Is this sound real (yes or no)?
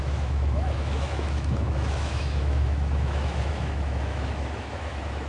no